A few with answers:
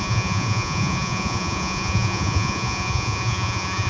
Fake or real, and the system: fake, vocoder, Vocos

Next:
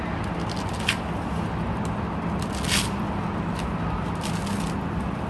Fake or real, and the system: real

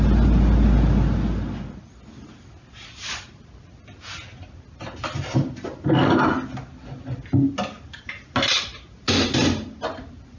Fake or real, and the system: real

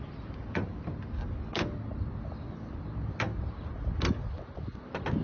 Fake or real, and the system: real